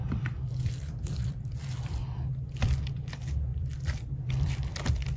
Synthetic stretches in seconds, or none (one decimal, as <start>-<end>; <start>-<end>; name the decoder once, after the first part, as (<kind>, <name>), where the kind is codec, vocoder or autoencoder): 0.0-2.0 (vocoder, BigVGAN v2); 2.9-5.2